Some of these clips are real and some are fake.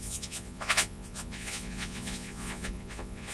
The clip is fake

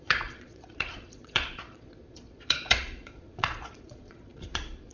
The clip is fake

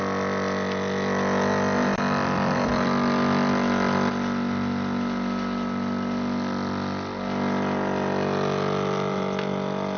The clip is real